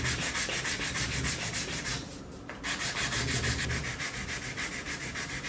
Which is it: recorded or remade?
recorded